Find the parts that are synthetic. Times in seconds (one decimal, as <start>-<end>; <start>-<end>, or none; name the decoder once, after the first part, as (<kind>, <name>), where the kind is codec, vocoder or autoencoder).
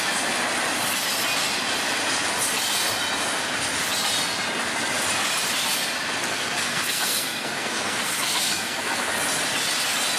6.2-9.1 (codec, SNAC)